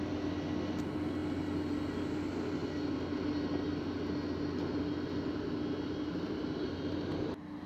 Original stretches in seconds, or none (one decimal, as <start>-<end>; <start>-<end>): 0.0-7.7